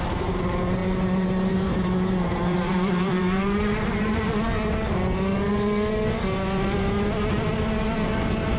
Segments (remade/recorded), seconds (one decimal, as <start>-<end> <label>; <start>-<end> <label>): 0.0-8.6 remade